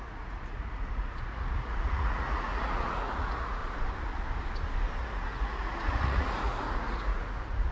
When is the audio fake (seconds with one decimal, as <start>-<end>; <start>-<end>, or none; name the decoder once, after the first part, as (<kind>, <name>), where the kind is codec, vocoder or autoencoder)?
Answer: 0.0-3.6 (vocoder, Vocos); 5.0-7.7